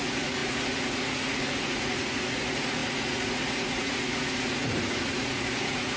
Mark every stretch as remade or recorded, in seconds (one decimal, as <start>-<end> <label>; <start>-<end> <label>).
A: 0.0-6.0 remade